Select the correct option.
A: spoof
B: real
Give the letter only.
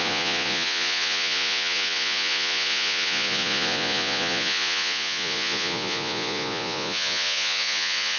A